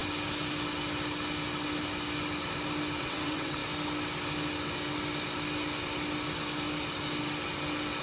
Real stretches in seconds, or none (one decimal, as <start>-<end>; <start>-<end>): 0.0-3.0; 3.6-8.0